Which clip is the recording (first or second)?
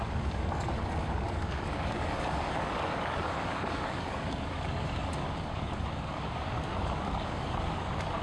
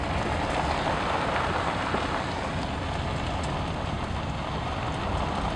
second